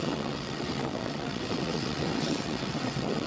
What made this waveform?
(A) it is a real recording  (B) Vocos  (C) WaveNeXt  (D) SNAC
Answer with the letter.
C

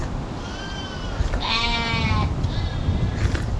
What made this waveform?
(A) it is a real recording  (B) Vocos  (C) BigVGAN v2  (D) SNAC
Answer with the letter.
A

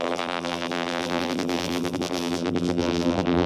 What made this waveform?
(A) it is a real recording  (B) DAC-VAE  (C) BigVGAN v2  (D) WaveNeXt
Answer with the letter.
C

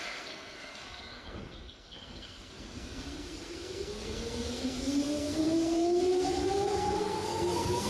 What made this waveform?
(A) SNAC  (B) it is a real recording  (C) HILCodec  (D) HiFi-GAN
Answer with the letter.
A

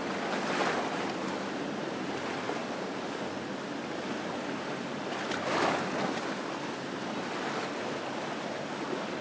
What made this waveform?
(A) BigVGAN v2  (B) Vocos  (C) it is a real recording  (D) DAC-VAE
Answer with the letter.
C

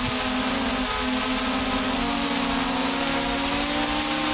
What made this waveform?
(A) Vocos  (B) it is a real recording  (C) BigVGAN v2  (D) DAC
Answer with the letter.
B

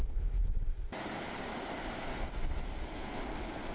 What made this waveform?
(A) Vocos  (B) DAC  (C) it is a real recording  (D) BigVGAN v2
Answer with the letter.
C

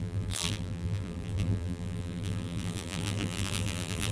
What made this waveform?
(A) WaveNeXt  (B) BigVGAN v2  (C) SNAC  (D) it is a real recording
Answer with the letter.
B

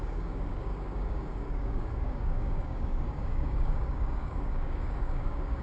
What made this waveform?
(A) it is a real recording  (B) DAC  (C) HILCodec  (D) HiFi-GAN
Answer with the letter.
B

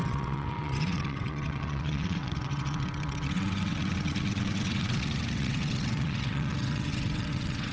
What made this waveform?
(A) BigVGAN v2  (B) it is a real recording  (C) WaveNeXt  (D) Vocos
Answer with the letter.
C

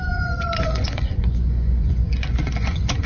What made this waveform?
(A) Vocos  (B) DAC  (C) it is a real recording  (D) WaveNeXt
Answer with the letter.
A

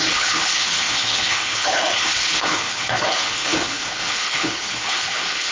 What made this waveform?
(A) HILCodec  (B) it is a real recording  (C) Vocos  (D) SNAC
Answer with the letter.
A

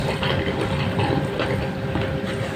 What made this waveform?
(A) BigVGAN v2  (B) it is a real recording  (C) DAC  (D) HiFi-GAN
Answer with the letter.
B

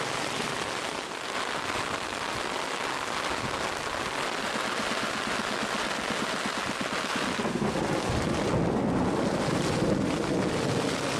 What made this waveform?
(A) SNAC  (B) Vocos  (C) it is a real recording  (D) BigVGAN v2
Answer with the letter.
C